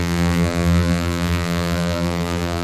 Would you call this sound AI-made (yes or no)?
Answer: yes